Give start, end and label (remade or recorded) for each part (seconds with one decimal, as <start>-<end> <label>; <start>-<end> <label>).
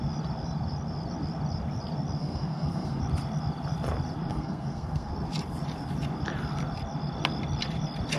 0.0-2.2 recorded; 2.2-3.0 remade; 3.0-4.3 recorded; 4.3-5.1 remade; 5.1-8.2 recorded